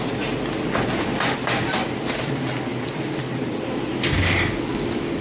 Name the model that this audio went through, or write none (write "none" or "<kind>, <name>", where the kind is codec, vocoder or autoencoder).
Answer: none